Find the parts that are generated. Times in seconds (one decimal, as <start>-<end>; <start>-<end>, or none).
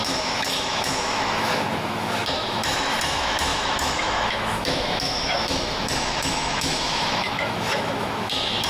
0.0-8.7